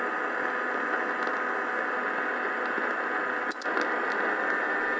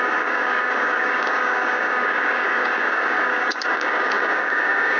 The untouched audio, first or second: first